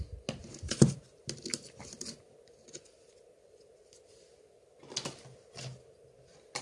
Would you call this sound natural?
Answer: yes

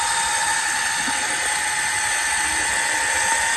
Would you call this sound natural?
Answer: yes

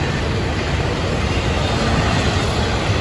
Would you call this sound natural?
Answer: yes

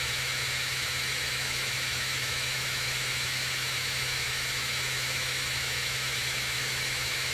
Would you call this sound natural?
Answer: no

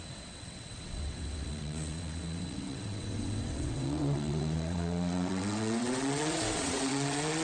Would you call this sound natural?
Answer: no